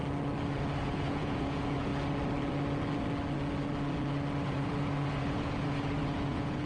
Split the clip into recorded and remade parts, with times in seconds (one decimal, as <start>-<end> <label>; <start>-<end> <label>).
0.0-0.8 recorded; 0.8-1.9 remade; 1.9-4.4 recorded; 4.4-6.7 remade